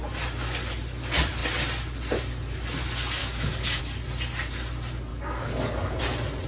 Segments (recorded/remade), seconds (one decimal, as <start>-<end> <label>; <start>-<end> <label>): 0.0-3.2 recorded; 3.2-3.8 remade; 3.8-5.1 recorded; 5.1-6.0 remade; 6.0-6.5 recorded